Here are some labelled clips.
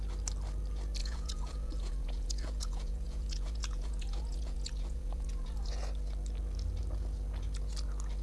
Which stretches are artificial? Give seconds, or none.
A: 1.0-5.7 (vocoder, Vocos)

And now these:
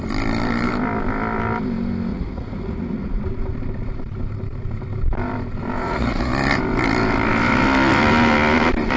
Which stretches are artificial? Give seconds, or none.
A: 2.1-3.2 (vocoder, Vocos); 5.8-6.3

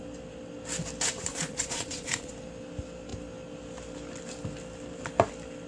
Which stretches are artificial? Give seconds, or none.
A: 1.3-2.3 (vocoder, Vocos)